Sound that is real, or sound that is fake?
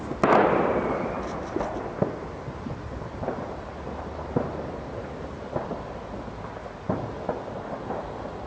real